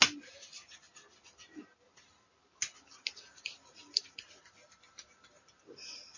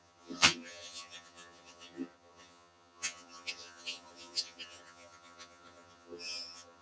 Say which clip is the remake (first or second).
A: second